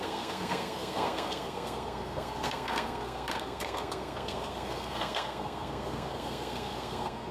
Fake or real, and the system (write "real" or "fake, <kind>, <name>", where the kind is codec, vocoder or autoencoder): fake, codec, SNAC